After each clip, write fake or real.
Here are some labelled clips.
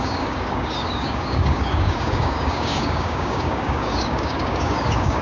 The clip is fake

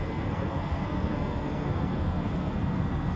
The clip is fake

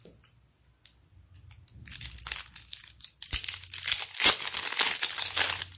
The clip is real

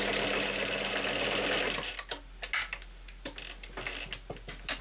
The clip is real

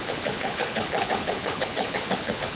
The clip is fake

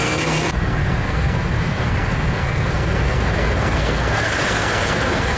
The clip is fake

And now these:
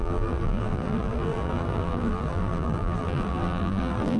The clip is fake